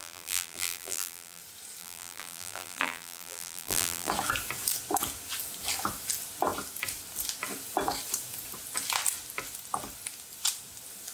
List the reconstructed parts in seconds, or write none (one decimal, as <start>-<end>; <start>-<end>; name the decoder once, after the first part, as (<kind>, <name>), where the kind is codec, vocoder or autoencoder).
0.0-1.4 (vocoder, BigVGAN v2); 1.8-4.1